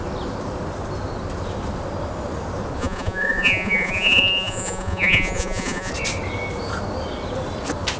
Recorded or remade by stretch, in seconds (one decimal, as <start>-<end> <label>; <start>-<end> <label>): 0.0-2.8 recorded; 2.8-5.9 remade; 5.9-8.0 recorded